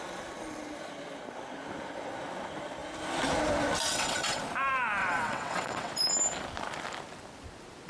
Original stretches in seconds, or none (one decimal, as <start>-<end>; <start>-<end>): 0.0-3.9; 4.4-5.0; 5.9-7.9